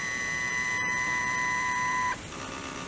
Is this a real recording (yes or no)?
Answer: no